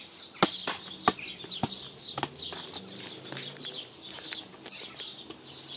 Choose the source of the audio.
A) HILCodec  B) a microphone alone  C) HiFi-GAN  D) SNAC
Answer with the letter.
B